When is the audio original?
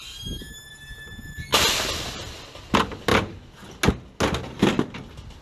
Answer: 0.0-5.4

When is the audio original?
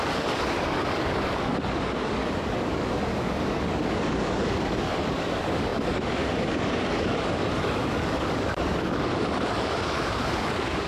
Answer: none